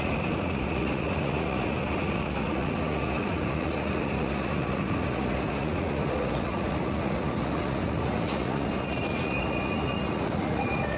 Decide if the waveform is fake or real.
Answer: fake